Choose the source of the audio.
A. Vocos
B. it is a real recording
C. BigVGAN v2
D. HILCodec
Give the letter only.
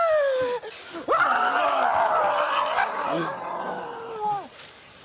B